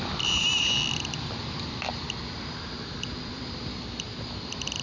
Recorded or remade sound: remade